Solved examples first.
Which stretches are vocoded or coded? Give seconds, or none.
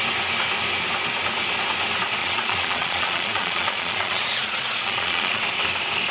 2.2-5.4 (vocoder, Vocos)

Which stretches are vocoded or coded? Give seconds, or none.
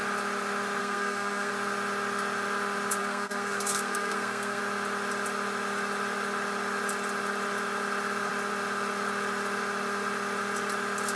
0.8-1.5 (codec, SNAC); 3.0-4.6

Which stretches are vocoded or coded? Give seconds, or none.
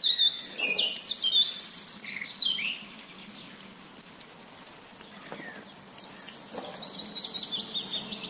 none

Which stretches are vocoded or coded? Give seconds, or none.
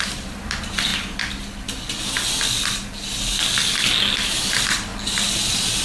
0.0-0.9 (vocoder, BigVGAN v2); 4.4-4.9